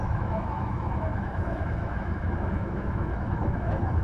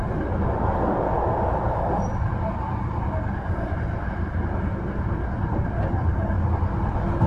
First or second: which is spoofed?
first